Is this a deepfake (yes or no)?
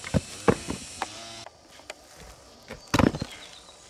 no